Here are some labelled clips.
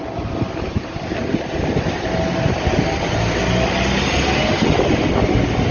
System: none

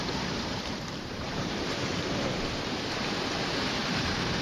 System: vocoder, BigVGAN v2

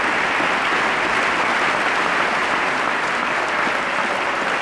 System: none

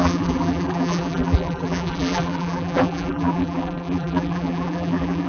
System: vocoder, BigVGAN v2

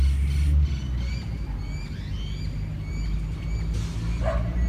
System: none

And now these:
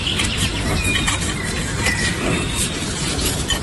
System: vocoder, BigVGAN v2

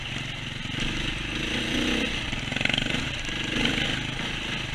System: none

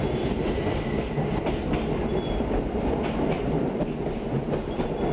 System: none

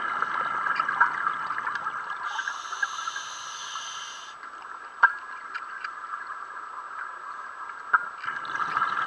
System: none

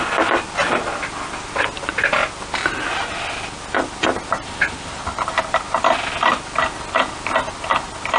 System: none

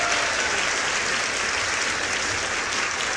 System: none